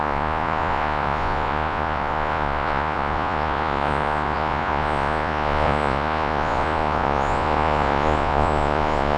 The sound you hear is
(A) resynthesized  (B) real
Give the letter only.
A